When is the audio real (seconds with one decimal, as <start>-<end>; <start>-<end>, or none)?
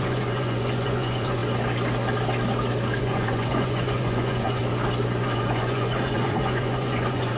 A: 1.4-3.0; 4.6-5.2